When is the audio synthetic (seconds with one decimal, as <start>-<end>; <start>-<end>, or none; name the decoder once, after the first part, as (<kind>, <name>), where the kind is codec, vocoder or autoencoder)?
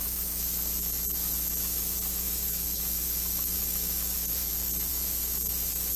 0.0-6.0 (autoencoder, DAC-VAE)